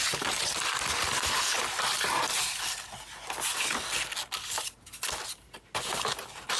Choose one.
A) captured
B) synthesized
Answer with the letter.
A